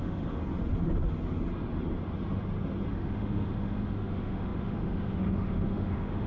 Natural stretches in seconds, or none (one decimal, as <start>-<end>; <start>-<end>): 0.4-2.9